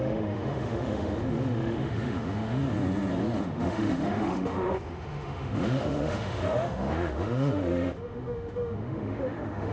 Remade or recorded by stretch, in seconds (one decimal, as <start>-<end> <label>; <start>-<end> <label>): 0.0-2.6 remade; 2.6-3.4 recorded; 3.4-9.7 remade